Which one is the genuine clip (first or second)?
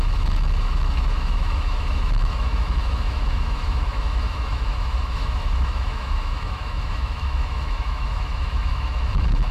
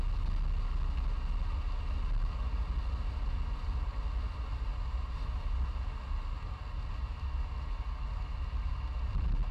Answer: second